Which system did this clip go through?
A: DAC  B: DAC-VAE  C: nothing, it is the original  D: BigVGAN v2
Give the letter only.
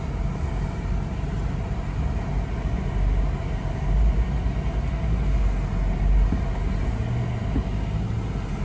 C